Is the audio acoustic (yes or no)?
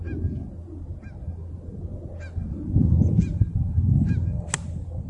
yes